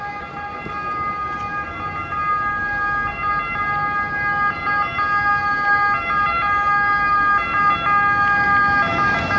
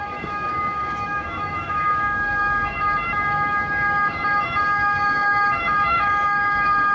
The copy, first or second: second